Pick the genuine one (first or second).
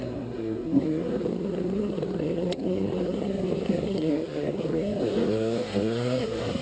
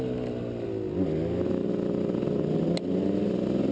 second